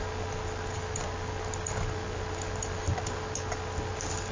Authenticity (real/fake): real